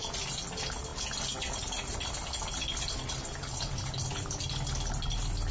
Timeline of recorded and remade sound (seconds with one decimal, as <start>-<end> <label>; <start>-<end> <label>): 0.0-5.5 recorded